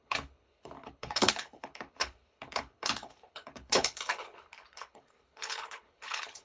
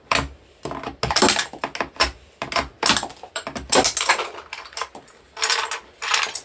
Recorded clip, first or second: second